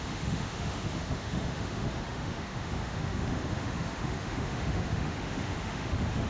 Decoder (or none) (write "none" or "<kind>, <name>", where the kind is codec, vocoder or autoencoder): autoencoder, DAC-VAE